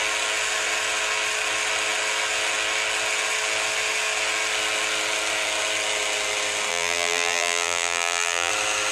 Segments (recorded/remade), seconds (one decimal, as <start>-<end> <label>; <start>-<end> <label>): 0.0-6.7 recorded; 6.7-8.5 remade; 8.5-8.9 recorded